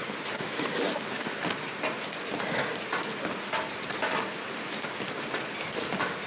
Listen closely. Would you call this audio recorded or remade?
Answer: recorded